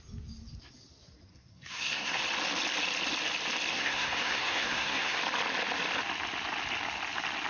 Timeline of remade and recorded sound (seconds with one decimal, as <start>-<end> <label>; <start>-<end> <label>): 0.0-1.3 recorded; 1.3-2.2 remade; 2.2-3.7 recorded; 3.7-5.2 remade; 5.2-7.5 recorded